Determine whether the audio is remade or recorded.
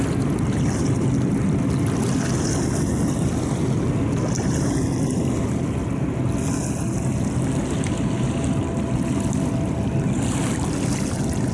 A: recorded